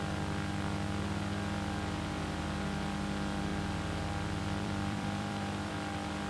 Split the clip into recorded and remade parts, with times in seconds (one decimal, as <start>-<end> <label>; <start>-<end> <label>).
0.0-3.5 recorded; 3.5-5.7 remade; 5.7-6.3 recorded